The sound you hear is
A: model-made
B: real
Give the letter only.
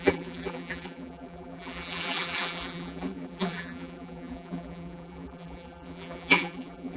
A